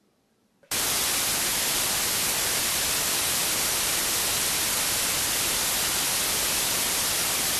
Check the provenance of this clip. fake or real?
real